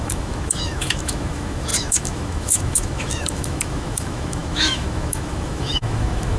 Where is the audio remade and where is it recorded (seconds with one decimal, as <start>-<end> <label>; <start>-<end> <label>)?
0.0-6.4 remade

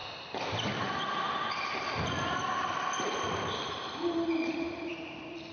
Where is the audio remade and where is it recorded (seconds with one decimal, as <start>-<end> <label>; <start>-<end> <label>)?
0.0-5.5 remade

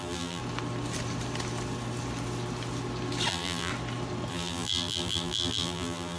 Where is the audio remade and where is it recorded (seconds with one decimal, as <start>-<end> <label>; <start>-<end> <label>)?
0.0-0.4 remade; 0.4-3.3 recorded; 3.3-3.7 remade; 3.7-4.3 recorded; 4.3-6.2 remade

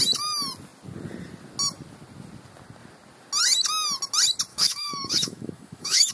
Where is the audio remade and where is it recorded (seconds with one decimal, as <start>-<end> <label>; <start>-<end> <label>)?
0.0-4.5 recorded; 4.5-6.1 remade

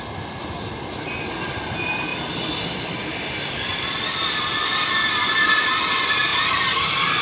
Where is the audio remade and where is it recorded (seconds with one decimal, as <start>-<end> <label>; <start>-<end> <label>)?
0.0-2.1 recorded; 2.1-5.1 remade; 5.1-7.2 recorded

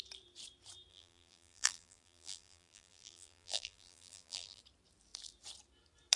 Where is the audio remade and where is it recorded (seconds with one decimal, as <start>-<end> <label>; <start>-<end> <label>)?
0.0-0.9 recorded; 0.9-4.6 remade; 4.6-6.2 recorded

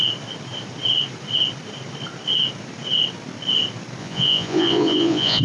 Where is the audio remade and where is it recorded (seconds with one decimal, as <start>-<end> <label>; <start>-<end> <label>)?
0.0-4.0 recorded; 4.0-5.4 remade

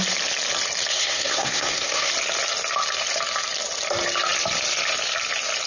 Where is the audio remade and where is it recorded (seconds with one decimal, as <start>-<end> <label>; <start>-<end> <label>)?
0.0-0.9 recorded; 0.9-2.1 remade; 2.1-5.7 recorded